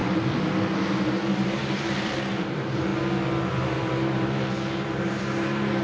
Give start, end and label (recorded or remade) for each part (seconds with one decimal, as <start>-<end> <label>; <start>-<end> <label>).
0.0-0.8 recorded; 0.8-2.9 remade; 2.9-3.5 recorded; 3.5-5.8 remade